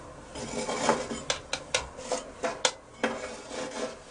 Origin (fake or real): real